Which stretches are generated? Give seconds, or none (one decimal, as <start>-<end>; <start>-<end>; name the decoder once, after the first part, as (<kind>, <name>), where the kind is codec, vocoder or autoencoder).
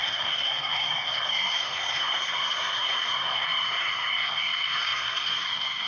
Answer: 0.0-5.9 (codec, SNAC)